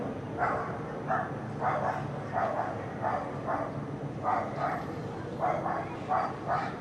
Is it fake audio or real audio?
real